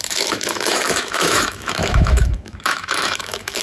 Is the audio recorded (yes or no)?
no